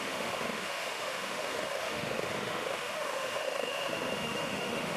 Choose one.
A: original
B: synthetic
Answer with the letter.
B